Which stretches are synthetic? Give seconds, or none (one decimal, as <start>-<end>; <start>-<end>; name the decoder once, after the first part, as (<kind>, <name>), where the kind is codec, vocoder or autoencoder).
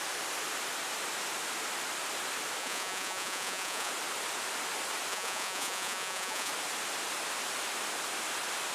2.6-3.9 (vocoder, Vocos); 5.1-6.5